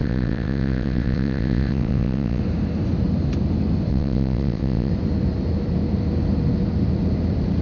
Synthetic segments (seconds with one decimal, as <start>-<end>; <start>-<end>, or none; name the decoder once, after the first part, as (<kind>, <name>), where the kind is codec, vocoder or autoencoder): 0.0-2.4 (vocoder, WaveNeXt); 3.9-4.9